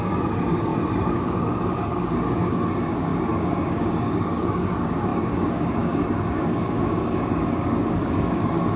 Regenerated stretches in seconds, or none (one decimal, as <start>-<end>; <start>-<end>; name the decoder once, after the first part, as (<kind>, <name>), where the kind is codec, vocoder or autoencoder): 0.0-8.8 (codec, DAC)